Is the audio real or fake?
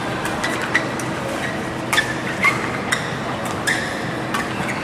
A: real